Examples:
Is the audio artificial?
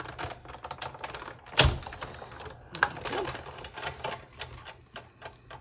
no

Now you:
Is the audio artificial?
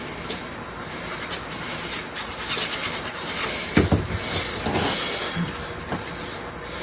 no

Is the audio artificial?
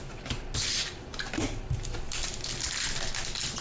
no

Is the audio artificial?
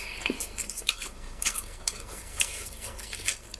yes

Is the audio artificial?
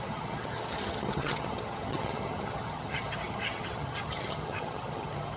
yes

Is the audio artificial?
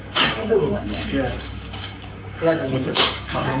yes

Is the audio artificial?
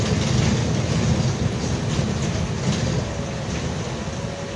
no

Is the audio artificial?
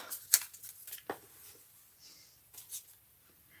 no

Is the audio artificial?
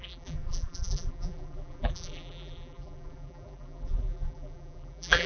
yes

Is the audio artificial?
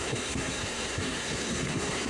yes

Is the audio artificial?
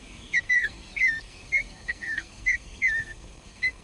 yes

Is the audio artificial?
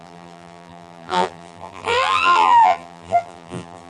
yes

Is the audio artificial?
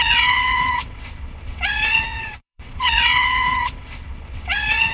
yes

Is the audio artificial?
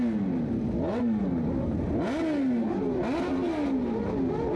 no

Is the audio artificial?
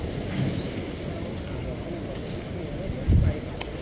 no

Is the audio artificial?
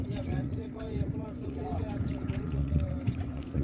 yes